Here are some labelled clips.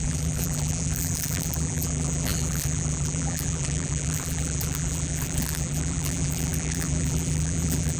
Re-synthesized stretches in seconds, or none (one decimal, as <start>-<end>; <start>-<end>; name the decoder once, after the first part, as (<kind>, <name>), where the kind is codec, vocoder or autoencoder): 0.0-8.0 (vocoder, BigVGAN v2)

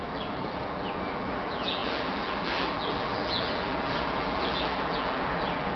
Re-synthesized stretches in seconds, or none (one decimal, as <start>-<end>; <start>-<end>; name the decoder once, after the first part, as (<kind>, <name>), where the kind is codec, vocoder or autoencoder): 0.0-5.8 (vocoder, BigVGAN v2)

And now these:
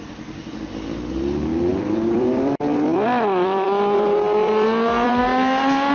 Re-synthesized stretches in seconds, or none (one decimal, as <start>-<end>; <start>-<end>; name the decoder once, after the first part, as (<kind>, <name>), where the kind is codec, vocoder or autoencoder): 1.7-5.2 (vocoder, BigVGAN v2)

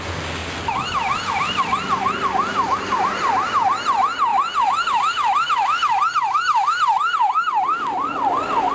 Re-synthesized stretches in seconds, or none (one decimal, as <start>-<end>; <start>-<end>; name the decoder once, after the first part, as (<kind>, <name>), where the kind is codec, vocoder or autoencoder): 2.5-3.5 (vocoder, BigVGAN v2); 4.3-5.0